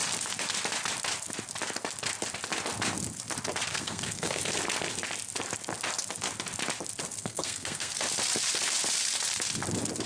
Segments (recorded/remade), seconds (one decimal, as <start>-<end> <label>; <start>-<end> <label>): 0.0-3.7 recorded; 3.7-4.4 remade; 4.4-7.2 recorded; 7.2-7.9 remade; 7.9-10.1 recorded